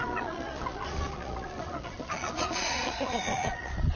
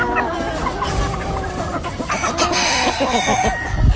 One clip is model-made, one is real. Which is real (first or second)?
second